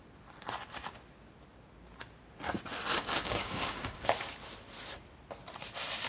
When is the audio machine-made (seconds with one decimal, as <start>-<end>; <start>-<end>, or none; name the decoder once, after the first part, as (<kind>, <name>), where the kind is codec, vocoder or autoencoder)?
2.9-4.1 (codec, DAC)